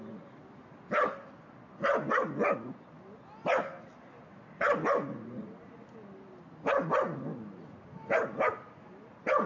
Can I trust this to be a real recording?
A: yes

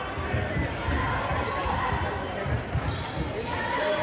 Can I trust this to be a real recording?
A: yes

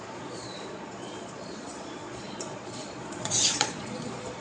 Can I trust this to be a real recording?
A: no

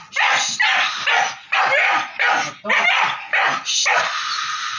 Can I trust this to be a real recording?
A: yes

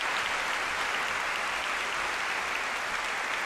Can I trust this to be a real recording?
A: yes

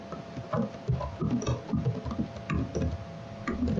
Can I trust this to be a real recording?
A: yes